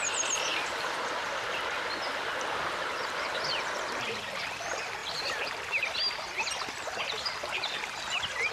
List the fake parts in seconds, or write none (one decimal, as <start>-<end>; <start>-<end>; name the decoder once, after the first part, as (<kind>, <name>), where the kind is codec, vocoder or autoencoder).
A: none